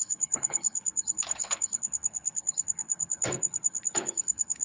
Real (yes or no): no